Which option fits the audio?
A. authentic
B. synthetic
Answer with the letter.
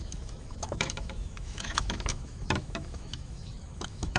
B